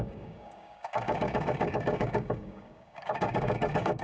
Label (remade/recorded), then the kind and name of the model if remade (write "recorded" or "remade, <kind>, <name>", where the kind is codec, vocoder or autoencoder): remade, codec, DAC